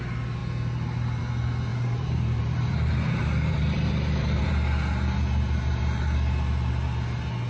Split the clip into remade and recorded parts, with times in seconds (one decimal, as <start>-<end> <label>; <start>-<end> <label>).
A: 0.0-1.7 recorded; 1.7-4.5 remade; 4.5-7.5 recorded